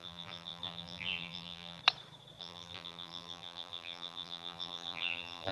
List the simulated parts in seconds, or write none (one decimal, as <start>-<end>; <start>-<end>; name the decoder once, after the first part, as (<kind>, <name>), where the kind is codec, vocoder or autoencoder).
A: 0.0-1.8 (vocoder, BigVGAN v2); 2.4-5.5